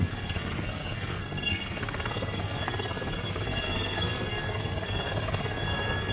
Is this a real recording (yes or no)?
no